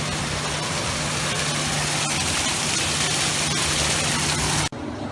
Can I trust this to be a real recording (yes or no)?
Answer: yes